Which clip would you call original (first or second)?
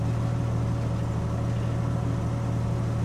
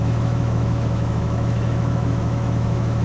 first